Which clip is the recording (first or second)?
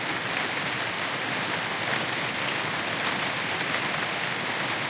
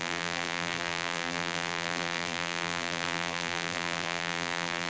first